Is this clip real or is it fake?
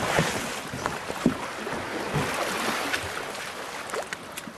real